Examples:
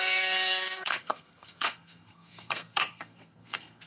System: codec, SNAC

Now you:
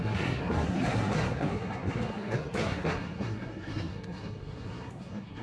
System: codec, SNAC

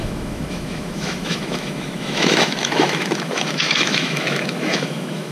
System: autoencoder, DAC-VAE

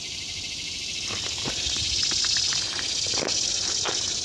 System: vocoder, BigVGAN v2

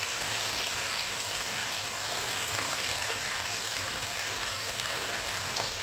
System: codec, DAC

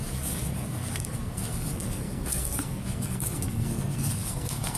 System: codec, SNAC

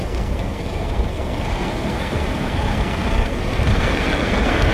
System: codec, SNAC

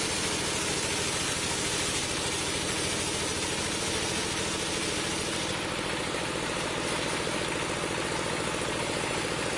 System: none